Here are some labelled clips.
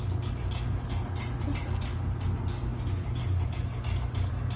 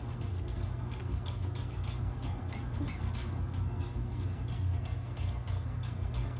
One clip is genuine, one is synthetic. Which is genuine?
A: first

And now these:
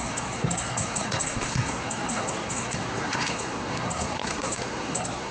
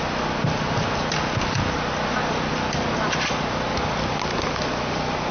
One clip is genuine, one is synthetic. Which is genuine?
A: second